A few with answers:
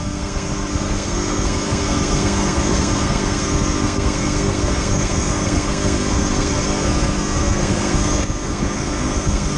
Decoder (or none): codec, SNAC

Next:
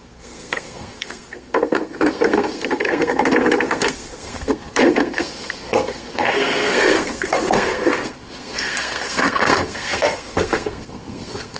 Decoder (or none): codec, SNAC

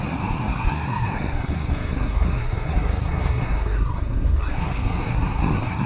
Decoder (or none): codec, SNAC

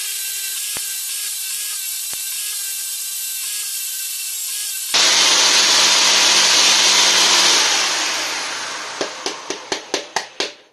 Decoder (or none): none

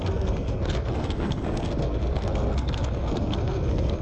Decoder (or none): codec, SNAC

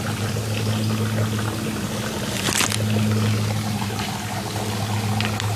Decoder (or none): none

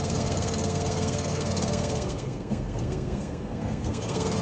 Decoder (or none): codec, SNAC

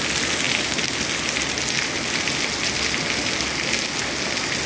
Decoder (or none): none